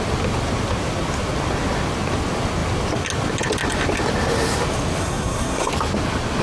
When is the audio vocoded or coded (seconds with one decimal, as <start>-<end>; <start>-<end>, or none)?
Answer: 5.0-5.7

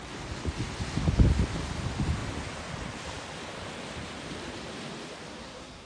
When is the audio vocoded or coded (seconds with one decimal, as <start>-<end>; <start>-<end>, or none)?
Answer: 5.3-5.9

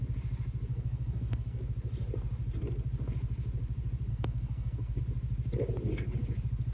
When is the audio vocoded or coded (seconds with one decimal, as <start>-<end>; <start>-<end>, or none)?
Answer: 0.7-1.7; 4.1-5.0

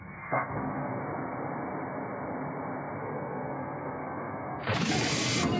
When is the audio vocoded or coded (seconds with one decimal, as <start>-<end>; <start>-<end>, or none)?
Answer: 0.0-1.0; 3.0-4.6

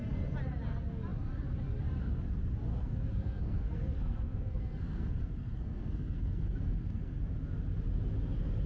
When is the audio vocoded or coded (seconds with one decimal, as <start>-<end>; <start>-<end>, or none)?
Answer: 2.7-7.2

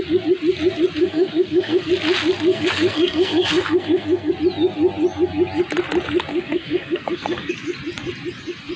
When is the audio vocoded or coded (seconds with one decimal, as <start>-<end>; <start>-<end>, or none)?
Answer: 1.0-1.9; 2.5-4.3; 6.3-7.5

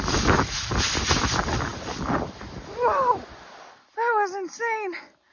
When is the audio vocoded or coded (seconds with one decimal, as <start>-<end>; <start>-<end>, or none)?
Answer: none